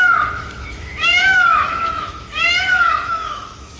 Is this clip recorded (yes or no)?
no